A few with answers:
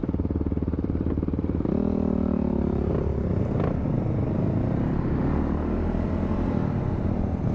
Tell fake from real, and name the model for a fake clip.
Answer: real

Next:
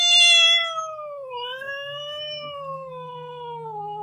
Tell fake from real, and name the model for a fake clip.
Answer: real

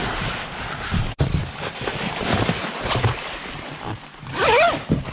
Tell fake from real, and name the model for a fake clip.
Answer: fake, vocoder, BigVGAN v2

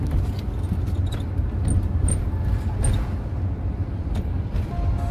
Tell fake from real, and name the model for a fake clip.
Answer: real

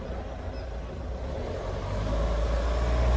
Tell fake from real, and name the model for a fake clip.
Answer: real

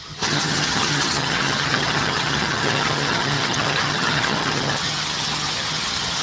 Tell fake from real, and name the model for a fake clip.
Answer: fake, vocoder, HiFi-GAN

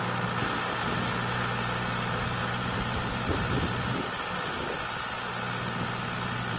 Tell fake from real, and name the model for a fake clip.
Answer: real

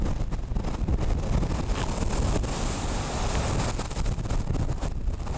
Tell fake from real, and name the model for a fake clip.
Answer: real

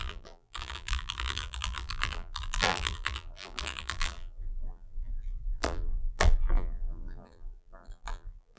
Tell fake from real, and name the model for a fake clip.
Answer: fake, vocoder, BigVGAN v2